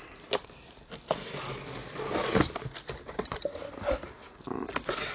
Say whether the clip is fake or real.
real